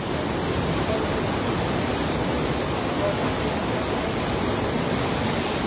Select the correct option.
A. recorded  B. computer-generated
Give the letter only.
A